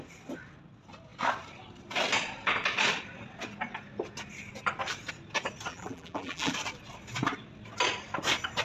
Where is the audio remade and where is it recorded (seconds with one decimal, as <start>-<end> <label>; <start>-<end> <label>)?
0.0-5.7 recorded; 5.7-6.5 remade; 6.5-8.6 recorded